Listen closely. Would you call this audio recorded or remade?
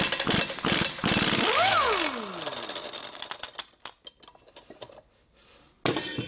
recorded